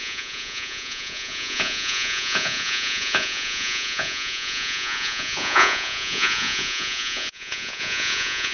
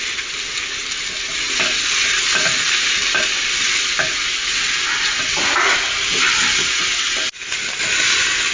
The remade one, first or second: first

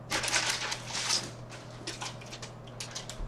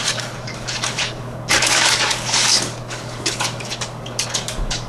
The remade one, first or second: second